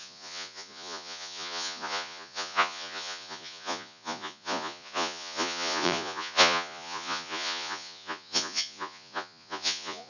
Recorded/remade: remade